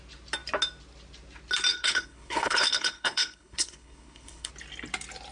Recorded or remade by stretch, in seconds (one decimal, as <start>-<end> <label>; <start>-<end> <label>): 0.0-1.7 recorded; 1.7-4.5 remade; 4.5-5.3 recorded